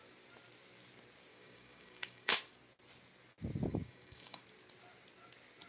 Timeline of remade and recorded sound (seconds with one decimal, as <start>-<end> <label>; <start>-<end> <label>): 0.0-1.3 recorded; 1.3-2.4 remade; 2.4-3.7 recorded; 3.7-4.4 remade; 4.4-5.7 recorded